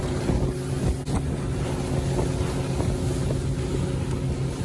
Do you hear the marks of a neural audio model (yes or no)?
no